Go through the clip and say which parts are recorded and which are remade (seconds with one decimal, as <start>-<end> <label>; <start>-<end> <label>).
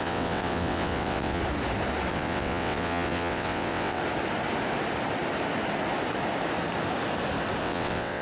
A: 0.0-1.4 remade; 1.4-2.1 recorded; 2.1-4.0 remade; 4.0-7.6 recorded; 7.6-8.2 remade